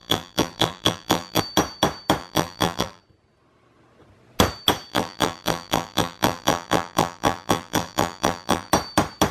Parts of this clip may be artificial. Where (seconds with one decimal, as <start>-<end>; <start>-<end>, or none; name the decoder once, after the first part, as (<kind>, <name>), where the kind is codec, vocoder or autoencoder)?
0.0-1.4 (vocoder, BigVGAN v2); 2.2-3.0; 4.9-8.7